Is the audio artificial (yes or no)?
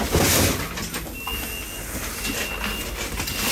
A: no